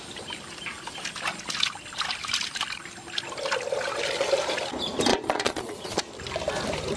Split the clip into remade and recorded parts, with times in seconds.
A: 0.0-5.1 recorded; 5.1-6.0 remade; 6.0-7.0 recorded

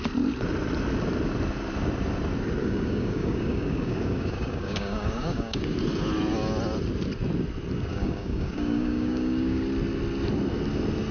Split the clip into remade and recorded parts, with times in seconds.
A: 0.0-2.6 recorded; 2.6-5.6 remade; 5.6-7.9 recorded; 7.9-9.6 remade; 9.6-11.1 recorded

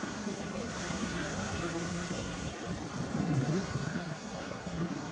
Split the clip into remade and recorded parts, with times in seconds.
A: 0.0-2.5 remade; 2.5-3.2 recorded; 3.2-5.1 remade

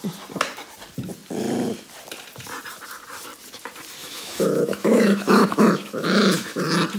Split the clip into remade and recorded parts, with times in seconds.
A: 0.0-4.0 recorded; 4.0-6.6 remade; 6.6-7.0 recorded

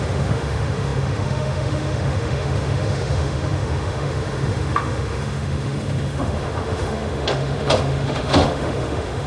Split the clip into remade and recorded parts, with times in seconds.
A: 0.0-9.3 remade

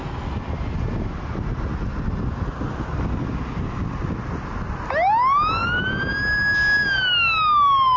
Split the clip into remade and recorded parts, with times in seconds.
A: 0.0-8.0 recorded

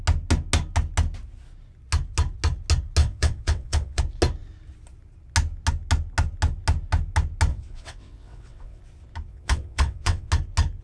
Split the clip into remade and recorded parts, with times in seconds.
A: 0.0-3.0 recorded; 3.0-4.0 remade; 4.0-7.5 recorded; 7.5-8.8 remade; 8.8-9.3 recorded; 9.3-10.3 remade; 10.3-10.8 recorded